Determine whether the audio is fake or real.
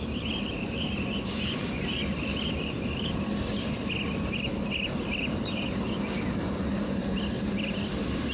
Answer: real